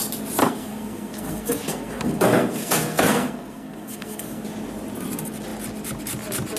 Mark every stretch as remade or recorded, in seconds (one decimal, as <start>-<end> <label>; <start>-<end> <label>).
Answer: 0.0-0.4 recorded; 0.4-4.4 remade; 4.4-6.6 recorded